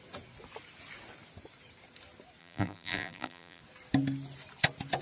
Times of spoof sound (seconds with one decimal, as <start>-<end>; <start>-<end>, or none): 2.4-3.6